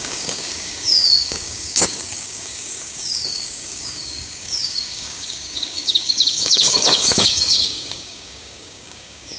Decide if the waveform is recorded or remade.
remade